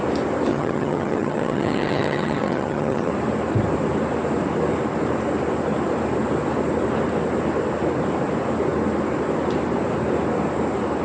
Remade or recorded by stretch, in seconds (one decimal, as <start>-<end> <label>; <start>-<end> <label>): 0.0-0.5 recorded; 0.5-3.1 remade; 3.1-11.0 recorded